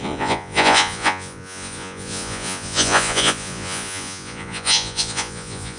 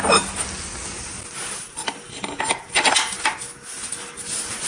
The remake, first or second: first